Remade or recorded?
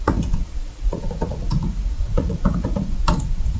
remade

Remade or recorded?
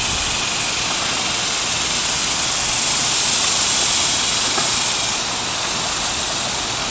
recorded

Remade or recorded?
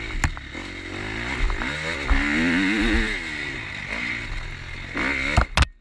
recorded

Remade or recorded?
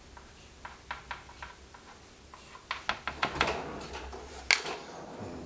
recorded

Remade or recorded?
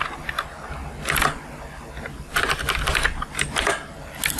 recorded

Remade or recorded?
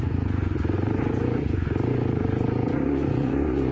remade